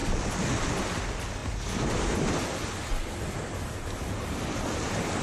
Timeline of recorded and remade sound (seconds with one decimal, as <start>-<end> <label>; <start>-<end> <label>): 0.0-5.2 recorded